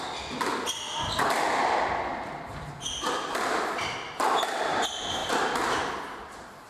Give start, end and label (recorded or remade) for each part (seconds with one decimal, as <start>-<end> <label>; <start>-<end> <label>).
0.0-6.7 recorded